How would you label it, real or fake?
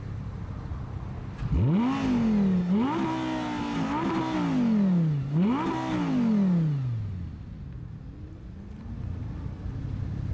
real